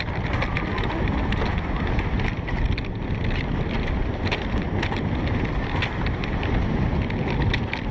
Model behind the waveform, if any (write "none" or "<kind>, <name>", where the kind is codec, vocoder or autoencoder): none